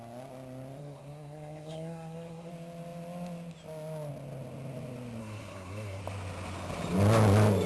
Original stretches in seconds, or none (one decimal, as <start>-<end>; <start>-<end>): 0.0-0.8; 2.5-5.2; 6.0-7.7